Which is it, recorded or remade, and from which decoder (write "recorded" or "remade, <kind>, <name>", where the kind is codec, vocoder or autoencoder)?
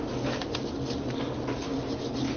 recorded